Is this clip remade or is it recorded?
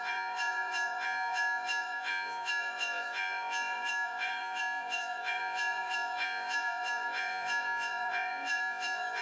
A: remade